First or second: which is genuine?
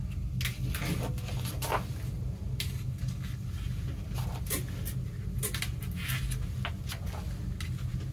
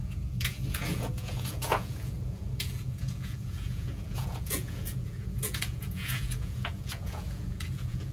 first